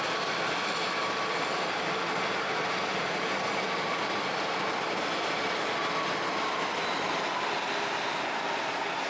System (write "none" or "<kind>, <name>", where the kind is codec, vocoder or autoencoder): none